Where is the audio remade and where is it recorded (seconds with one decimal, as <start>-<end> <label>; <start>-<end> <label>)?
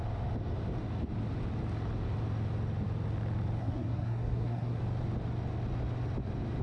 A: 0.0-3.6 recorded; 3.6-4.8 remade; 4.8-6.6 recorded